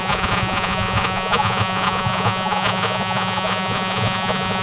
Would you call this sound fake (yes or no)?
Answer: yes